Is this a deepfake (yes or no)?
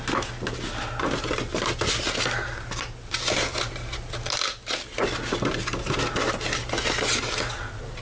no